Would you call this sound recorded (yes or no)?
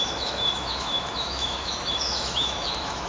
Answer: no